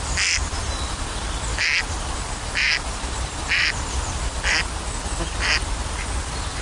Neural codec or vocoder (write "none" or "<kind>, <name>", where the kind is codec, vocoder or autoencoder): none